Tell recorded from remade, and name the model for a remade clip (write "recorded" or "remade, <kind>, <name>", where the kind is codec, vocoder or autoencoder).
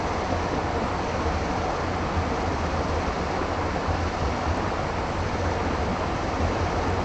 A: recorded